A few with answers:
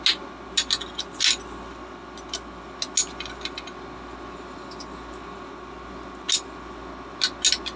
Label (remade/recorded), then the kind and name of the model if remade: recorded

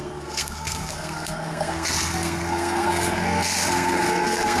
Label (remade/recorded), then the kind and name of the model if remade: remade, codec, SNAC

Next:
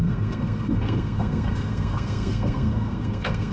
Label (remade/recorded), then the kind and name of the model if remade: remade, codec, SNAC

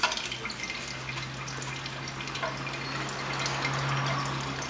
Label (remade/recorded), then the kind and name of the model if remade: recorded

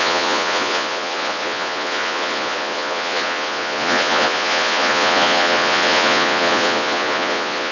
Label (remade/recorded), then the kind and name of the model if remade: remade, vocoder, Vocos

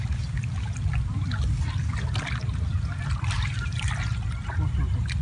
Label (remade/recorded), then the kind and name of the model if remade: recorded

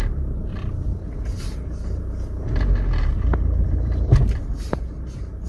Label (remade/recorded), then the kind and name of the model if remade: recorded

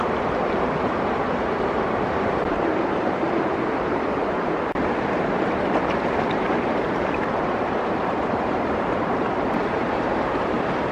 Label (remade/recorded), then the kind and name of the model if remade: remade, vocoder, BigVGAN v2